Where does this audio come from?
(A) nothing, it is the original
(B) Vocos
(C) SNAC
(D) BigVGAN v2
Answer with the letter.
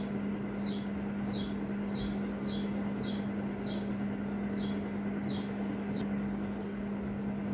A